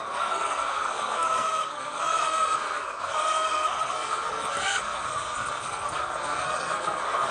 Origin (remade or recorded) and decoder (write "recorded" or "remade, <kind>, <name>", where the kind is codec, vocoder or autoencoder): remade, codec, SNAC